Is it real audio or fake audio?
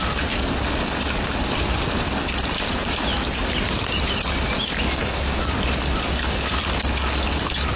real